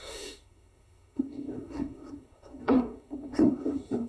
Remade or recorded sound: remade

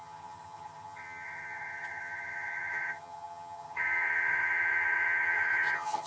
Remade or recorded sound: remade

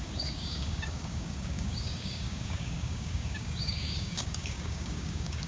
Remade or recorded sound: remade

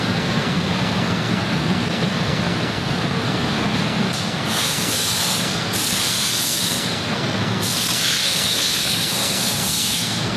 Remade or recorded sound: remade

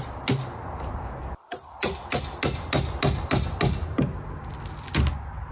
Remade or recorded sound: recorded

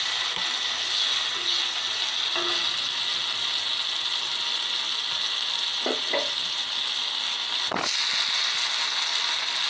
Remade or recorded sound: recorded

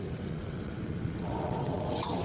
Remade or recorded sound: remade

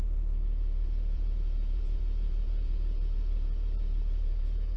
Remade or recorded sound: remade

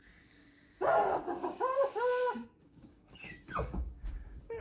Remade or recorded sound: remade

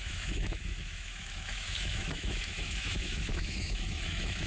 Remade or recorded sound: remade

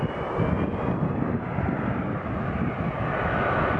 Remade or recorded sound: recorded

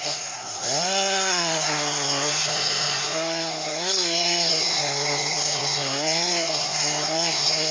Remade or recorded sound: remade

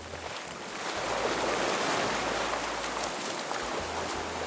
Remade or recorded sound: recorded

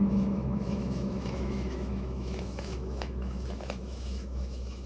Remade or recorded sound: remade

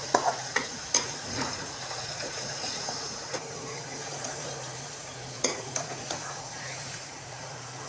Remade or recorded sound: remade